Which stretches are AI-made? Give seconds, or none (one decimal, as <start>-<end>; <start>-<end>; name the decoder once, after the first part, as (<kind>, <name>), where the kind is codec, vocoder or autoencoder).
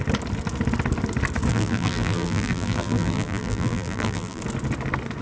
1.5-4.4 (vocoder, BigVGAN v2)